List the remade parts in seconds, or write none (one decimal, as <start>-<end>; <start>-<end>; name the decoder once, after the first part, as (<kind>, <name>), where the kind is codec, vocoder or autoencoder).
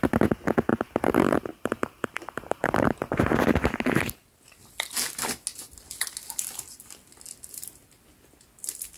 0.7-3.2 (vocoder, BigVGAN v2)